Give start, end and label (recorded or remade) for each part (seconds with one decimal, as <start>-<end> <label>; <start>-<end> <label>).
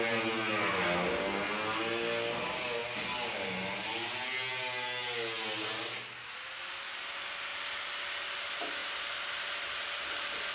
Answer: 0.0-10.5 recorded